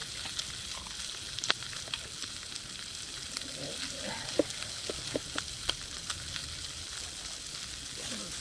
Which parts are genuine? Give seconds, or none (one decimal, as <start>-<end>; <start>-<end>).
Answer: 0.0-8.4